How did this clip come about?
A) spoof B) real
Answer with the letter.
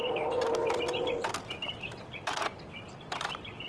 B